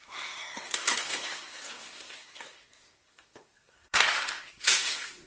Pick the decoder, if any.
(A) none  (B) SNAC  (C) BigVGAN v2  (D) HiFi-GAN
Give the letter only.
B